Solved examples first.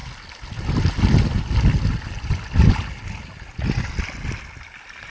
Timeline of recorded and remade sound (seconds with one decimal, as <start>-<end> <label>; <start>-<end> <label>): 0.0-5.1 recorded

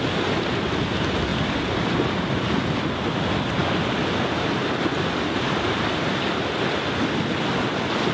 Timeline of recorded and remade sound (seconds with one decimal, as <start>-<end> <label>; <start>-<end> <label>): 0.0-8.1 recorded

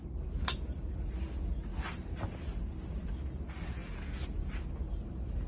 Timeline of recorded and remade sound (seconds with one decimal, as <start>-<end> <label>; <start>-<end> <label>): 0.0-5.5 recorded

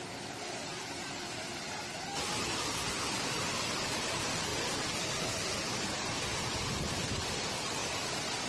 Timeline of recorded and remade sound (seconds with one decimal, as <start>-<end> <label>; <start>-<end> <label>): 0.0-8.5 recorded

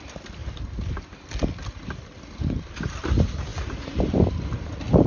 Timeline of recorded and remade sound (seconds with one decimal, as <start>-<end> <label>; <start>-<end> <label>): 0.0-5.1 recorded

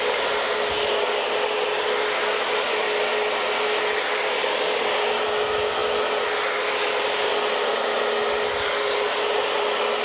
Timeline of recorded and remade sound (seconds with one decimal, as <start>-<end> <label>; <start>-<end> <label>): 0.0-4.4 recorded; 4.4-5.2 remade; 5.2-10.0 recorded

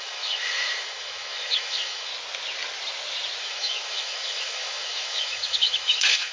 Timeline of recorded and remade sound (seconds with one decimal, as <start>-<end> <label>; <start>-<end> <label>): 0.0-2.1 remade; 2.1-3.4 recorded; 3.4-6.3 remade